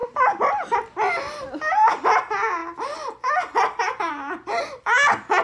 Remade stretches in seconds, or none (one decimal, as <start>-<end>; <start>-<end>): none